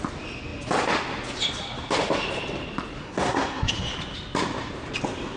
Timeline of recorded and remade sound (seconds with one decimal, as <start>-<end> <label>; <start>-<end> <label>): 0.0-3.0 recorded; 3.0-3.7 remade; 3.7-5.4 recorded